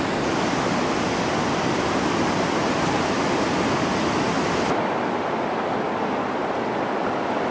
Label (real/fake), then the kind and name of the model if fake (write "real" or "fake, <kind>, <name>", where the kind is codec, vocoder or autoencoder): real